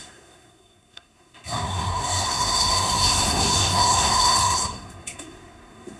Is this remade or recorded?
remade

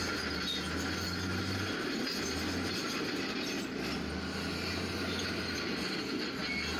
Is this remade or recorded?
recorded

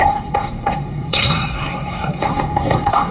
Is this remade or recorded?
remade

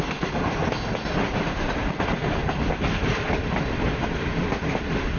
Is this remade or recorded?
recorded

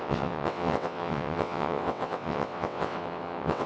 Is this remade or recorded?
remade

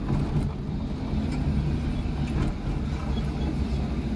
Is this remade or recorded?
recorded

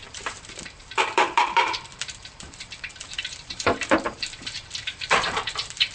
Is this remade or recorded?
remade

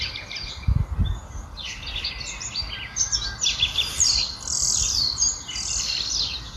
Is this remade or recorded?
recorded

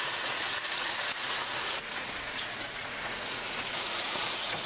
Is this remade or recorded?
remade